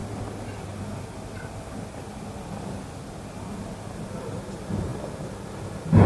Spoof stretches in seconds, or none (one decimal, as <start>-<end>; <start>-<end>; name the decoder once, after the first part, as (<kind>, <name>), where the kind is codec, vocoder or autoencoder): none